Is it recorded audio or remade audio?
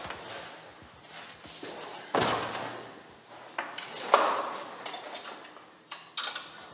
recorded